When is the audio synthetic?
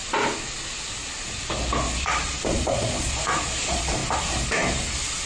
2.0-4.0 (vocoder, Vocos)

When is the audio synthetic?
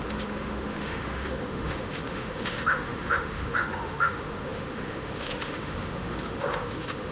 0.0-7.1 (autoencoder, DAC-VAE)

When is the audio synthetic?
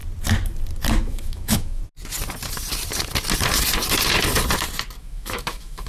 1.0-1.8 (autoencoder, DAC-VAE); 5.0-5.9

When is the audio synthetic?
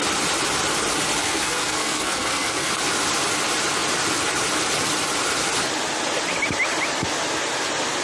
1.2-2.7 (codec, SNAC)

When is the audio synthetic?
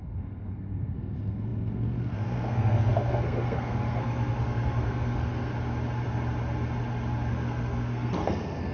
0.0-5.5 (codec, SNAC); 7.3-8.7